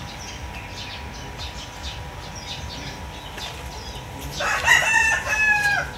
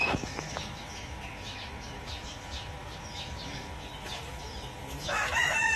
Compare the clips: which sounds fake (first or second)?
second